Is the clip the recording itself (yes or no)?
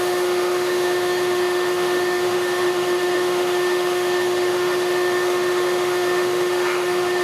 no